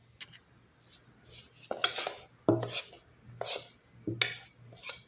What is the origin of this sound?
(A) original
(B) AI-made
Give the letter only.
A